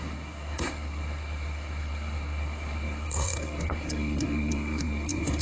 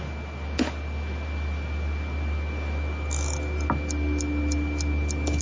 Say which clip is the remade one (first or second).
first